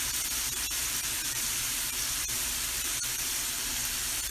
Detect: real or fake fake